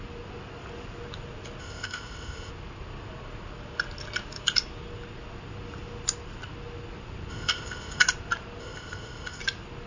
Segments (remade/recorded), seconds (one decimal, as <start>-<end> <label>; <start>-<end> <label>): 0.0-1.6 recorded; 1.6-2.5 remade; 2.5-7.3 recorded; 7.3-8.0 remade; 8.0-8.6 recorded; 8.6-9.4 remade; 9.4-9.9 recorded